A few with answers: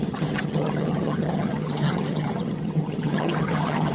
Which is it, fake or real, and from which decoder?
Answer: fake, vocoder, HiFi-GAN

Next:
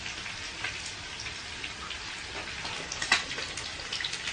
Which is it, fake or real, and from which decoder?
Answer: real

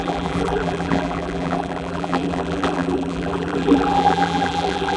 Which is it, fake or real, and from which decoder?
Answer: fake, vocoder, BigVGAN v2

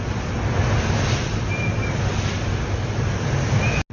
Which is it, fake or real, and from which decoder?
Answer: real